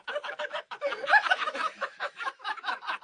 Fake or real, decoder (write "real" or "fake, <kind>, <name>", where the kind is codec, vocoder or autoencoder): fake, autoencoder, DAC-VAE